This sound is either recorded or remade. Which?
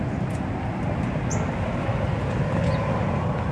recorded